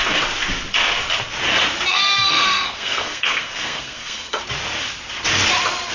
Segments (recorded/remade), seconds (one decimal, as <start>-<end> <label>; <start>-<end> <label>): 0.0-1.9 recorded; 1.9-4.4 remade; 4.4-5.9 recorded